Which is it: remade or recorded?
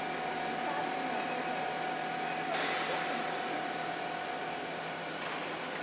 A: recorded